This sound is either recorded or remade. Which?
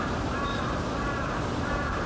remade